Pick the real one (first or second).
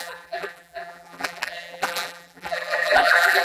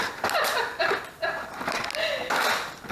second